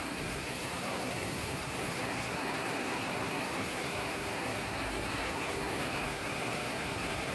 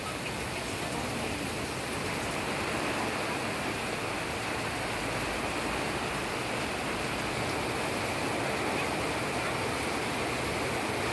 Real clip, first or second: second